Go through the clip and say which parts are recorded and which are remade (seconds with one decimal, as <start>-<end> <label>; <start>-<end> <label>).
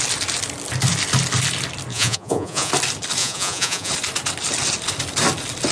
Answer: 0.0-1.9 recorded; 1.9-2.7 remade; 2.7-3.2 recorded; 3.2-3.9 remade; 3.9-5.7 recorded